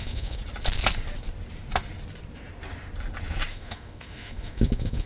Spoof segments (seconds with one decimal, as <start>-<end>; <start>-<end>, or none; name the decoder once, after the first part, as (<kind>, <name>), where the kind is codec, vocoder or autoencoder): 0.0-0.4 (autoencoder, DAC-VAE); 3.5-5.1